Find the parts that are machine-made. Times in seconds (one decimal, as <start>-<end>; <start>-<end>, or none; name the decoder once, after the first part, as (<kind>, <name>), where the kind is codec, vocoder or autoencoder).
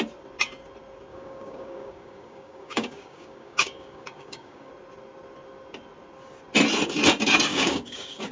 1.1-4.7 (codec, DAC); 7.5-8.3